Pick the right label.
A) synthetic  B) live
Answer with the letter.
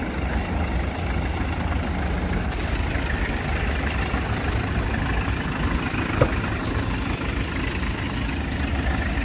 B